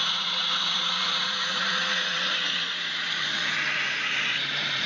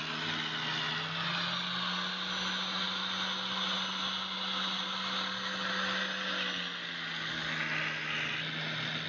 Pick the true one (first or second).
second